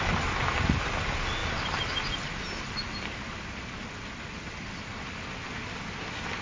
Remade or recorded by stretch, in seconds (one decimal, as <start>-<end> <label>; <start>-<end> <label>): 0.0-6.4 recorded